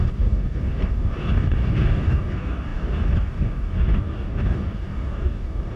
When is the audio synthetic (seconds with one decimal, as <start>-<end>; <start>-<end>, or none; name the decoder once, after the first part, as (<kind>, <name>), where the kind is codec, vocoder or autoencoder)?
0.0-5.8 (codec, DAC)